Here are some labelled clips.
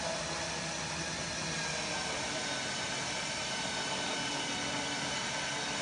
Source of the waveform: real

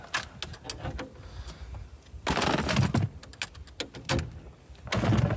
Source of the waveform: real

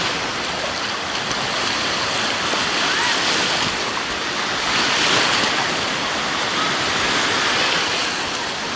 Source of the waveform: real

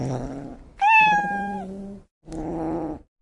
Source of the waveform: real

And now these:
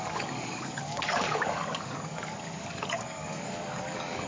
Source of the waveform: fake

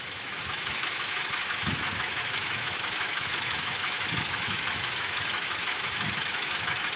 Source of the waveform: fake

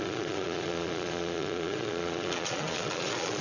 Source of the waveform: fake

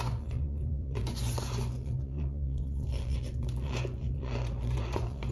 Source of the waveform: fake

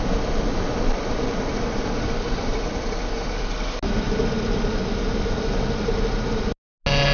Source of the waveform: real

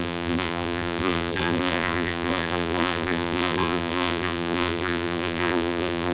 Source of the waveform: fake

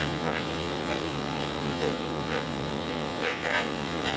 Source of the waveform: fake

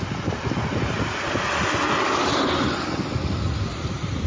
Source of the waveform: real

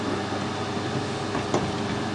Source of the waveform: real